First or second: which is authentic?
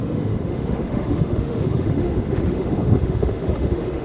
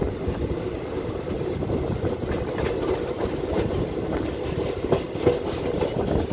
second